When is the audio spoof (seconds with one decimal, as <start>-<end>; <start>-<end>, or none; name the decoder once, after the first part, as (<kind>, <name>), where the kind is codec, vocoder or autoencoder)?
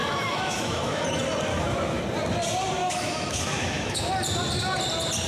0.0-1.0 (autoencoder, DAC-VAE); 1.5-2.0; 2.8-4.1